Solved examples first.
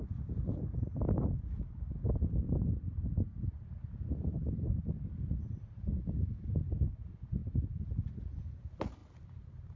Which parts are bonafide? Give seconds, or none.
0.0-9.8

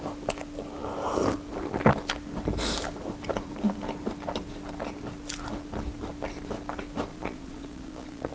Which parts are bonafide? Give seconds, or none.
0.0-7.1

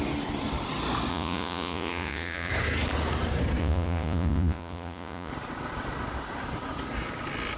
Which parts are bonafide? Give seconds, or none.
0.0-1.1; 2.5-3.6; 5.3-7.6

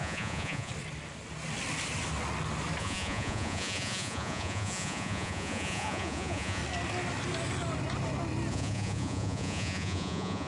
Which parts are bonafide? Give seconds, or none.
0.7-2.8; 6.6-8.5